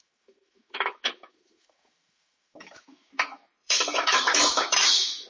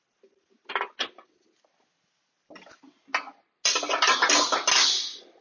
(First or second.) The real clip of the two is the second